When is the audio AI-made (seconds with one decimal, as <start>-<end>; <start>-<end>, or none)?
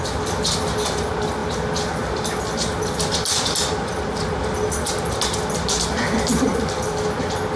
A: none